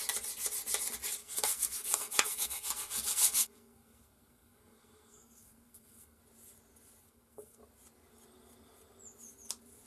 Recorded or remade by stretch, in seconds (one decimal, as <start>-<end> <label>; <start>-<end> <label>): 0.0-1.2 recorded; 1.2-6.2 remade; 6.2-7.0 recorded; 7.0-7.6 remade; 7.6-9.9 recorded